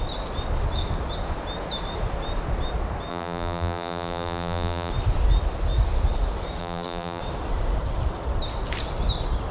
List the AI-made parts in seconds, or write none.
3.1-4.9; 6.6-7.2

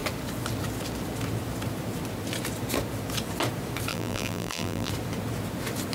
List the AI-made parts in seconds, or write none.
3.9-4.9